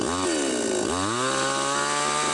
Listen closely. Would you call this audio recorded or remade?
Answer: recorded